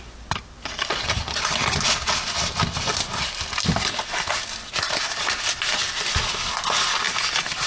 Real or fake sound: real